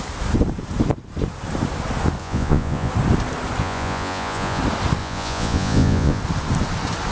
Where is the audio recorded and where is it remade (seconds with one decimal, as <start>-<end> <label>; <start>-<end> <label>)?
0.0-2.2 recorded; 2.2-2.9 remade; 2.9-3.6 recorded; 3.6-4.6 remade; 4.6-5.0 recorded; 5.0-6.2 remade; 6.2-7.1 recorded

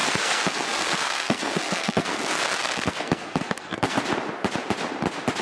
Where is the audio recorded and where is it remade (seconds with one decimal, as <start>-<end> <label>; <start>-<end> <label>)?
0.0-2.2 remade; 2.2-2.6 recorded; 2.6-4.0 remade; 4.0-5.4 recorded

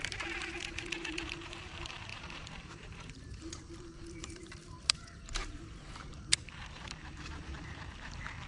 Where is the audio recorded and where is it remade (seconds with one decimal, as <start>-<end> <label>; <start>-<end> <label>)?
0.0-8.5 remade

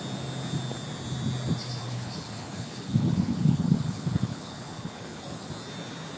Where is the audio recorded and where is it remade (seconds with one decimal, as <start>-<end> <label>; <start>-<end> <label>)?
0.0-1.8 recorded; 1.8-5.5 remade; 5.5-6.2 recorded

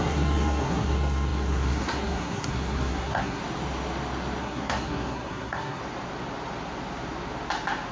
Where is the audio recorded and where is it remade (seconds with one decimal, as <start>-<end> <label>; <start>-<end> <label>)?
0.0-3.4 remade; 3.4-4.4 recorded; 4.4-5.8 remade; 5.8-7.9 recorded

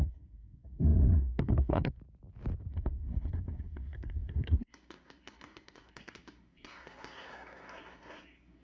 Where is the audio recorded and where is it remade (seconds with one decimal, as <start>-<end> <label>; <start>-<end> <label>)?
0.0-2.0 remade; 2.0-2.7 recorded; 2.7-8.6 remade